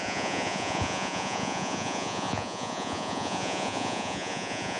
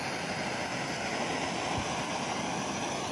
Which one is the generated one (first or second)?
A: first